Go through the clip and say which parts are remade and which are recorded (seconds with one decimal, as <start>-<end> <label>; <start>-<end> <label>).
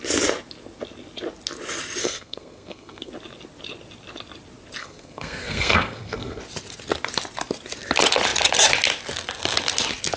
0.0-2.0 recorded; 2.0-3.1 remade; 3.1-4.8 recorded; 4.8-6.4 remade; 6.4-10.2 recorded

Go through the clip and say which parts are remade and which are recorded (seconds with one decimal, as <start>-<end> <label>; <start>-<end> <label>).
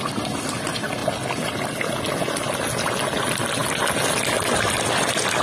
0.0-5.4 recorded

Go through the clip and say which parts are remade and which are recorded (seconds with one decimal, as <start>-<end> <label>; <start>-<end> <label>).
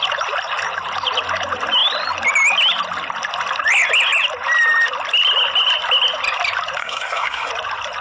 0.0-6.8 recorded; 6.8-7.5 remade; 7.5-8.0 recorded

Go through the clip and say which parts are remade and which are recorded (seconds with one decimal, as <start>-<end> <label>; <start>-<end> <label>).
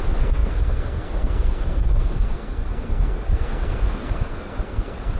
0.0-5.2 remade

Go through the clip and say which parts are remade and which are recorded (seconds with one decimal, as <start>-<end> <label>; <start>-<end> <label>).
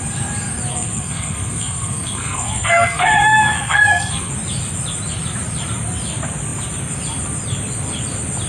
0.0-0.7 recorded; 0.7-4.3 remade; 4.3-8.5 recorded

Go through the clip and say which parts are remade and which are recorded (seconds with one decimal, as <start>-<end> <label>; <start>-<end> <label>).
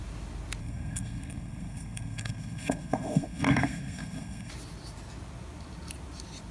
0.0-0.6 recorded; 0.6-4.5 remade; 4.5-6.5 recorded